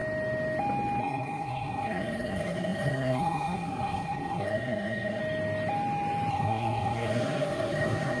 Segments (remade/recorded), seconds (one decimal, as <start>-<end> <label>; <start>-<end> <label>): 0.0-1.0 recorded; 1.0-5.2 remade; 5.2-6.3 recorded; 6.3-8.2 remade